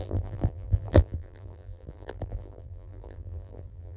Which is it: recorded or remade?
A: remade